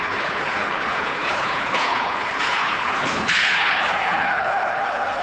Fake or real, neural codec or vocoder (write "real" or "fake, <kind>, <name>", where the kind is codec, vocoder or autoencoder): fake, codec, HILCodec